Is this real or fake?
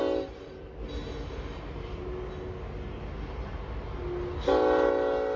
real